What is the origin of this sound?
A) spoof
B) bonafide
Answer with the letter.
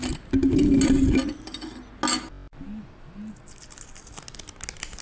B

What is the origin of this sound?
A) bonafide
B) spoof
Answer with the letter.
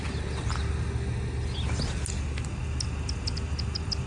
A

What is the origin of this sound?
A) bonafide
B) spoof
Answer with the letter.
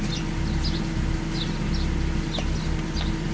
A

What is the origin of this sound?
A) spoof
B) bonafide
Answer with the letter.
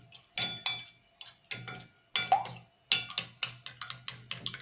B